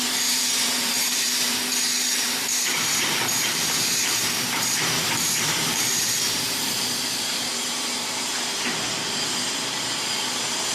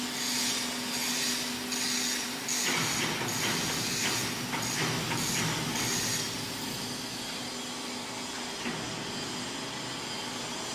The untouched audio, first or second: second